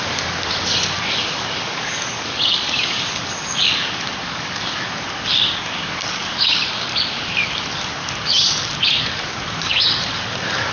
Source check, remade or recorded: remade